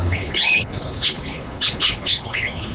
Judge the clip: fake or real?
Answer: fake